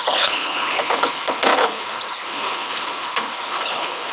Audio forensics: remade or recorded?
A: remade